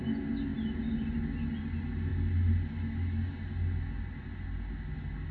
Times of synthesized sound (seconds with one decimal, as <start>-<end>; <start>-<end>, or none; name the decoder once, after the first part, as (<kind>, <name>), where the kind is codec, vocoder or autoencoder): none